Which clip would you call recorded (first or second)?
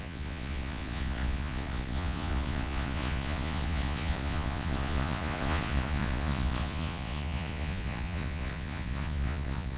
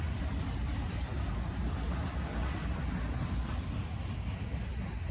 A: second